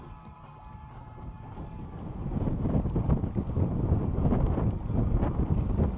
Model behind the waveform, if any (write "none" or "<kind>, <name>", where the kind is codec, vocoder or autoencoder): none